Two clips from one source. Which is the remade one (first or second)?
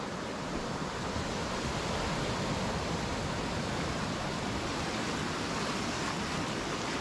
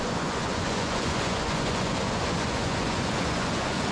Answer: second